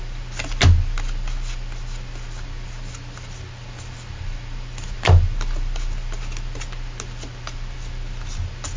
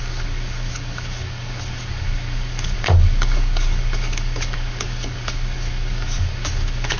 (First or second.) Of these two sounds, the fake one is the second